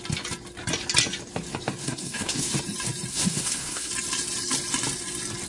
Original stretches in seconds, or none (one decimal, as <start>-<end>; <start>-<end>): 0.0-1.8; 2.5-3.1; 3.9-5.5